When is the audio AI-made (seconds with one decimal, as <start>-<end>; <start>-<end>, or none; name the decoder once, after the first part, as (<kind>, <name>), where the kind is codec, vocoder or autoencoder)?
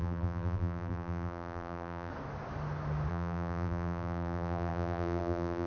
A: 0.0-2.1 (vocoder, BigVGAN v2); 3.1-5.7